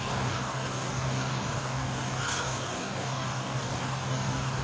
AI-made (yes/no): yes